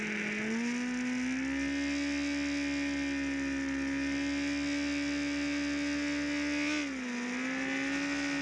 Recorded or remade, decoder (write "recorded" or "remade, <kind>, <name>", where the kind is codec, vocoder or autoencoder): recorded